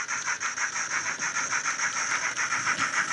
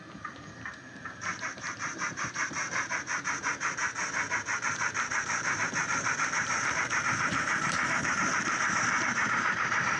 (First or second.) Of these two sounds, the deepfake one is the second